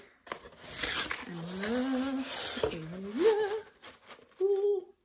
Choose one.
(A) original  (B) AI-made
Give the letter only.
A